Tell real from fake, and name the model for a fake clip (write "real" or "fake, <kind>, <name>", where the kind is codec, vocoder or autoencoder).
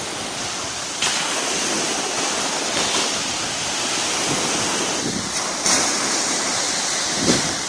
fake, vocoder, BigVGAN v2